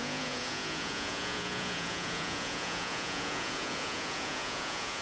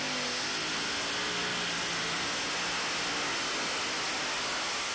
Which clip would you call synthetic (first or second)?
first